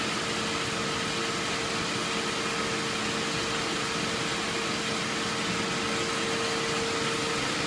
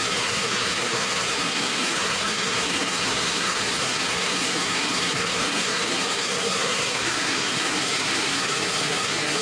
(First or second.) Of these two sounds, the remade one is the second